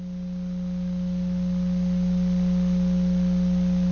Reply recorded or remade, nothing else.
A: recorded